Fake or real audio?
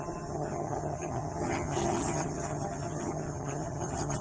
fake